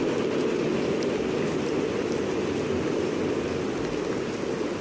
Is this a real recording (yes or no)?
yes